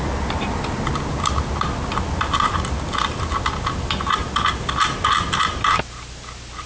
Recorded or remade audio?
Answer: recorded